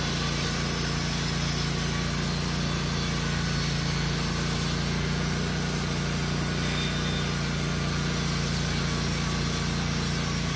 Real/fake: real